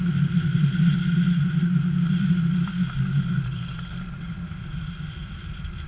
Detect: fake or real real